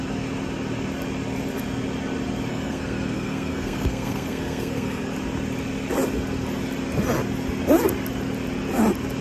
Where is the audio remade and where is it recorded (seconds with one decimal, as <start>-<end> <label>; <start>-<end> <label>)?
0.0-2.5 recorded; 2.5-5.0 remade; 5.0-9.2 recorded